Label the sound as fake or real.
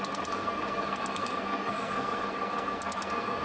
fake